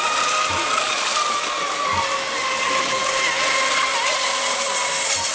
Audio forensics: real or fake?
real